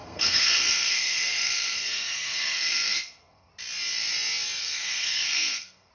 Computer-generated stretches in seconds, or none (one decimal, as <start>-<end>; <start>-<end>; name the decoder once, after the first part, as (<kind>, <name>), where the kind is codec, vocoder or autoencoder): 0.0-3.5 (codec, SNAC); 4.6-5.9

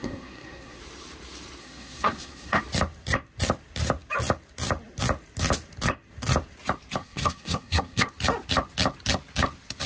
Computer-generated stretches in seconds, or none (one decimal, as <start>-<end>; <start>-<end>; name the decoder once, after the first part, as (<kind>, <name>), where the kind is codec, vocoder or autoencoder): 0.0-0.8 (codec, SNAC); 1.6-2.6; 7.0-8.1

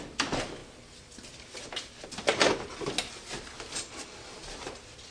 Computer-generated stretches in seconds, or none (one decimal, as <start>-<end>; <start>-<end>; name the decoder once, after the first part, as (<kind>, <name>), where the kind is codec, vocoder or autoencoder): none

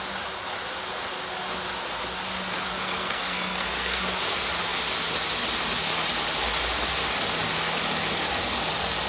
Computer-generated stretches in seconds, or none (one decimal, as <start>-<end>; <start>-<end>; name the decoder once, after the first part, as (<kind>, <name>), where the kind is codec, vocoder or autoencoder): 2.7-4.0 (codec, SNAC)

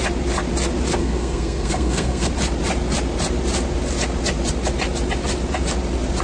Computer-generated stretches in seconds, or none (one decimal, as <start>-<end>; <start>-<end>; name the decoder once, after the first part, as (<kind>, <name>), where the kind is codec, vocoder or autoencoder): 1.0-2.3 (codec, SNAC)